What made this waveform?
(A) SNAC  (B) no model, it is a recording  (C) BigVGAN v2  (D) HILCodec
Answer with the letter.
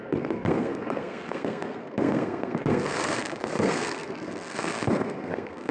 A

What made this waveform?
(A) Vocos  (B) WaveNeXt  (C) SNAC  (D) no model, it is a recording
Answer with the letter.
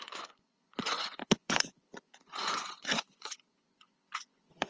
A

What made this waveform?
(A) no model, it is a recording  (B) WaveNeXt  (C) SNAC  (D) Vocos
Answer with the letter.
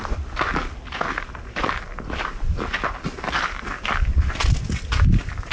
A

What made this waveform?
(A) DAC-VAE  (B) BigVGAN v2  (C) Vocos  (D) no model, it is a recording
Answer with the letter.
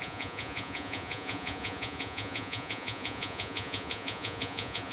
C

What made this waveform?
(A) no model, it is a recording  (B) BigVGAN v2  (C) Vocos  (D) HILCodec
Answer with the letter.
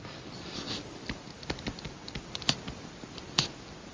A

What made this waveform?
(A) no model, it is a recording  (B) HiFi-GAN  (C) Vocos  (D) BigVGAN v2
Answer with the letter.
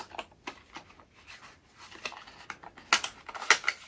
A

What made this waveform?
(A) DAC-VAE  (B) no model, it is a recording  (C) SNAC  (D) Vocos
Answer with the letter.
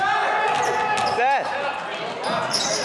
B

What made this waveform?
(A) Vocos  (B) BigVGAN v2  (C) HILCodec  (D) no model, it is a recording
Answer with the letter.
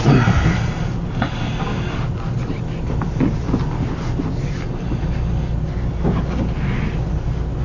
D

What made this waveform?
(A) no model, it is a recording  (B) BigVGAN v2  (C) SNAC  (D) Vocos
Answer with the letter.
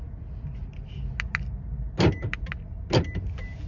A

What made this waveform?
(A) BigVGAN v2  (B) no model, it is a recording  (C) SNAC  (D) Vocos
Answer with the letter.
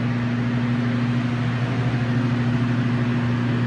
B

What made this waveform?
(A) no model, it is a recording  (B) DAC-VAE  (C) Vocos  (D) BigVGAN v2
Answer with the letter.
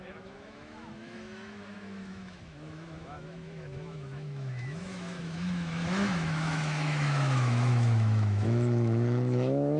B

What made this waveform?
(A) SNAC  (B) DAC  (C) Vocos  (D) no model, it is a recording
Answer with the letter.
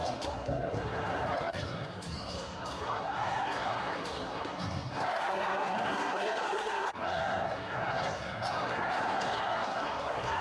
A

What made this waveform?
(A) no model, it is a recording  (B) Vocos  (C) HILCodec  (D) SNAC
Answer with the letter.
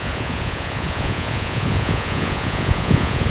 B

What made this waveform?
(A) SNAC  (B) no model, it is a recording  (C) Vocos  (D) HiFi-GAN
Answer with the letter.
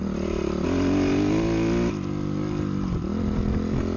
B